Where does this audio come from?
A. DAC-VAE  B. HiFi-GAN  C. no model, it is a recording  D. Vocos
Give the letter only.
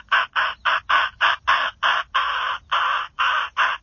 C